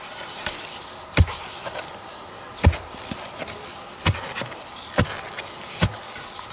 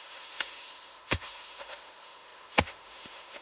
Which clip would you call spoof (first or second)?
second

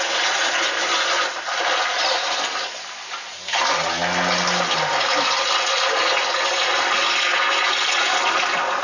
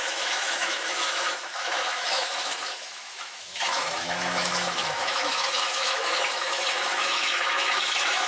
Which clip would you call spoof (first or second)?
second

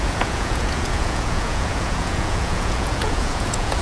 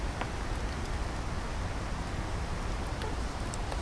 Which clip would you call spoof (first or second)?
first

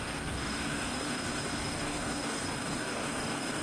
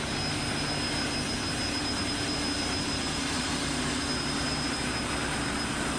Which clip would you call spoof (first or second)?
first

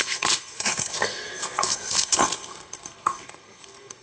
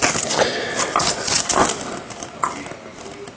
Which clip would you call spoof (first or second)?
first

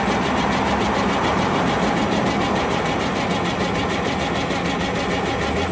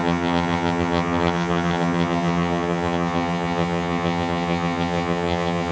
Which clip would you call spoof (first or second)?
second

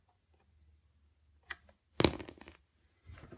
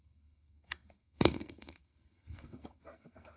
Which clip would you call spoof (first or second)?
second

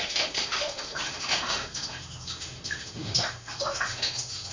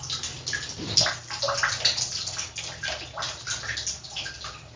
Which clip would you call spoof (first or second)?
first